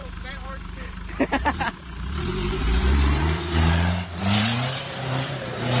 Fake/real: fake